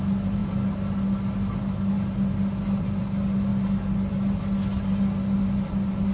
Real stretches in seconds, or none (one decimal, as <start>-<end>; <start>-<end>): 0.0-6.1

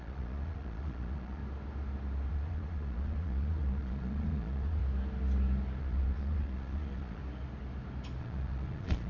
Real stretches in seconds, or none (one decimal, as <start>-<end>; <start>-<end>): 1.4-2.3; 4.8-5.8; 7.2-8.2

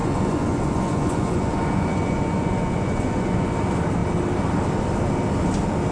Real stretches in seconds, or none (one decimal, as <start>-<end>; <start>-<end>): 3.5-5.9

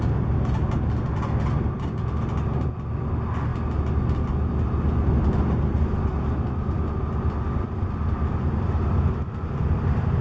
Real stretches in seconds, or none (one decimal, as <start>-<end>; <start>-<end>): 0.0-10.2